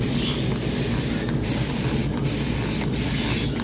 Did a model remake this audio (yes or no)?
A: no